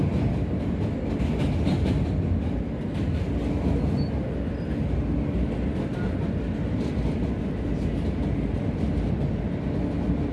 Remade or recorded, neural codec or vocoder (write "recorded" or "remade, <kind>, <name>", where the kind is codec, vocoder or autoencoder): recorded